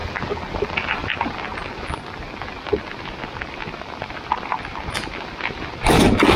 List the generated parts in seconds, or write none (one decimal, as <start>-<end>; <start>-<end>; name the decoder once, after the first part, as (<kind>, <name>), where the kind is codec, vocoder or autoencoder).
none